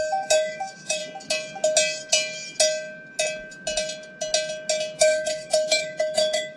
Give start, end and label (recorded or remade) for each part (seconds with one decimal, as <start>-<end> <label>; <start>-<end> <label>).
0.0-1.0 remade; 1.0-5.0 recorded; 5.0-6.6 remade